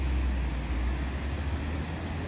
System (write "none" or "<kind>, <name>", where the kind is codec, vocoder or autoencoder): none